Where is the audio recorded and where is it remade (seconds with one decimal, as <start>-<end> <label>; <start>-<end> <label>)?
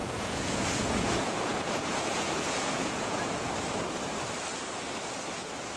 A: 0.0-3.5 remade; 3.5-5.8 recorded